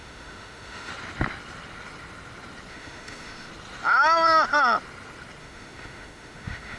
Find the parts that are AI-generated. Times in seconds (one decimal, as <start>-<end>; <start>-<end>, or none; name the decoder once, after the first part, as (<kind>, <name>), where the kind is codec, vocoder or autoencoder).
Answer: 0.0-0.9 (autoencoder, DAC-VAE); 2.7-3.5; 5.4-6.8